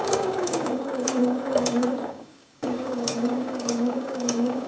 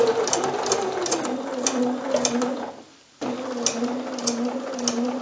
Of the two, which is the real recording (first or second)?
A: second